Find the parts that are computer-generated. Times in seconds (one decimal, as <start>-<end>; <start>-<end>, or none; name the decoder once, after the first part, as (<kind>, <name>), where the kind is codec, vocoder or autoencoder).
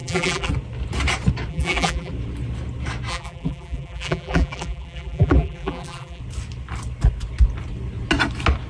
0.0-0.5 (vocoder, BigVGAN v2); 1.5-2.1; 3.1-6.2